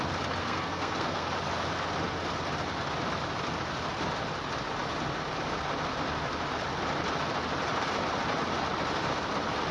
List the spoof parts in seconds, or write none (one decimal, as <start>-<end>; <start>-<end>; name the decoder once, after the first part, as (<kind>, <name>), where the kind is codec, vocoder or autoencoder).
0.4-1.3 (codec, SNAC)

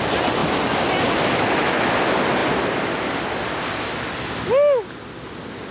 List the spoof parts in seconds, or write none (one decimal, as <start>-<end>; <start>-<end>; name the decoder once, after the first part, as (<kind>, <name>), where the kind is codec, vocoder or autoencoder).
none

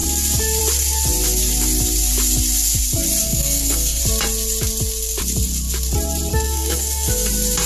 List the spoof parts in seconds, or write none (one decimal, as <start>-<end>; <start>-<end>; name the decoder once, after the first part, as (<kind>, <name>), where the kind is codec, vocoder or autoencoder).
3.2-4.0 (codec, SNAC); 6.3-7.3

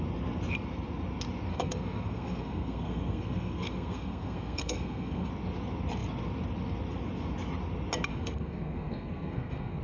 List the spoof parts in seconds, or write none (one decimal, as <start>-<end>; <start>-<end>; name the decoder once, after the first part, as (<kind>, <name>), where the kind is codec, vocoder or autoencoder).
1.5-5.3 (codec, SNAC); 8.1-9.8

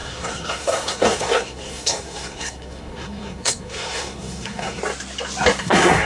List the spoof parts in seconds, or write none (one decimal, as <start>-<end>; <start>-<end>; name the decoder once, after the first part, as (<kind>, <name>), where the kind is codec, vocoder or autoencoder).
0.0-4.8 (codec, SNAC); 5.6-6.1

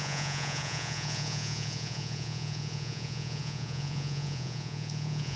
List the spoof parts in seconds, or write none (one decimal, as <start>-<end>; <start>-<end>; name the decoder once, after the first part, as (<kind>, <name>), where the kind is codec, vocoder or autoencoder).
0.0-5.4 (vocoder, Vocos)

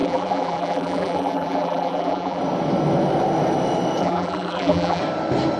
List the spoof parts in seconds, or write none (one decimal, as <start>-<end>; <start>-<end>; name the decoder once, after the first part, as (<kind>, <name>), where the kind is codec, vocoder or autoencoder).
0.0-2.4 (vocoder, BigVGAN v2); 4.0-5.0

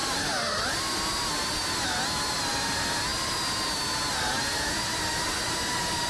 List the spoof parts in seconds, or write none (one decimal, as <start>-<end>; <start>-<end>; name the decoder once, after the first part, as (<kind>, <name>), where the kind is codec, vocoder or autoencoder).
none